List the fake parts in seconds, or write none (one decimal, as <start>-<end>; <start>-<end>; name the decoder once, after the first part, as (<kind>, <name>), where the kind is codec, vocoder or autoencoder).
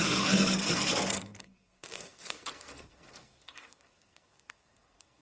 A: 0.0-5.2 (codec, SNAC)